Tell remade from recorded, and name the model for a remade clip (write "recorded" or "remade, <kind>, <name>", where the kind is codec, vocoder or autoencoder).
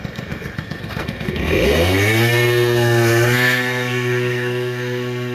remade, codec, SNAC